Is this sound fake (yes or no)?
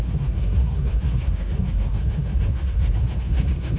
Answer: yes